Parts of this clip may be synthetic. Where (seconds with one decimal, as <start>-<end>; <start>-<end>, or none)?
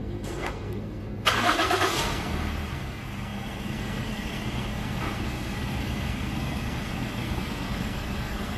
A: 0.0-8.6